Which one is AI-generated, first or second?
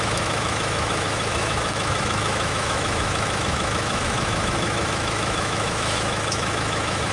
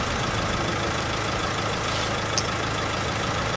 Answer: first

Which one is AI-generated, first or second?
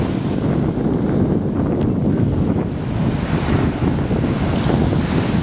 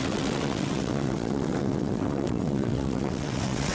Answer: second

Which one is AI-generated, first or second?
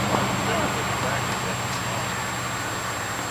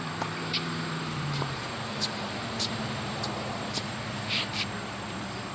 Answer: second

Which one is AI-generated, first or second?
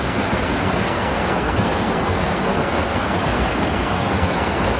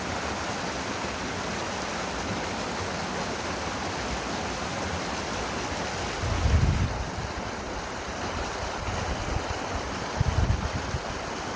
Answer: first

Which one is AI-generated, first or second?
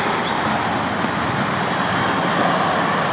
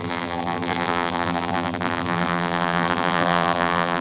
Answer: second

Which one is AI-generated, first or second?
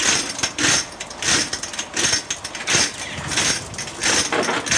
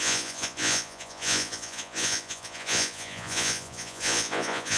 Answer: second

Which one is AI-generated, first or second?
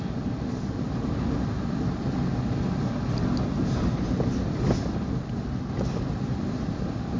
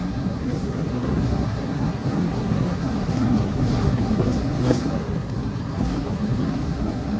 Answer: second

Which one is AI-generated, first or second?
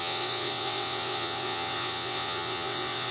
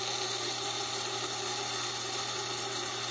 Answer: first